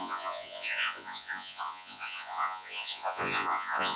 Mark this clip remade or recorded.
remade